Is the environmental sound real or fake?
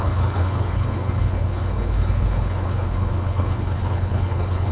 fake